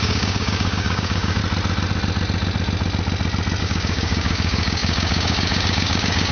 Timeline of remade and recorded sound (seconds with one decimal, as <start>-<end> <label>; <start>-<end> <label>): 0.0-1.4 remade; 1.4-3.6 recorded; 3.6-6.3 remade

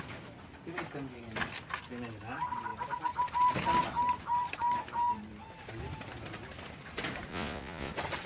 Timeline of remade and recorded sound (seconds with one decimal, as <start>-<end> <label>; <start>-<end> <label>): 0.0-7.3 recorded; 7.3-7.9 remade; 7.9-8.3 recorded